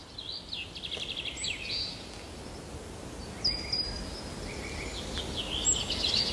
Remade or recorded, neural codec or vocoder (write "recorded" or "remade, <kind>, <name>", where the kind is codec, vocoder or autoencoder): recorded